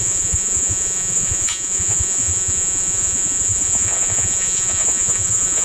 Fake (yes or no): yes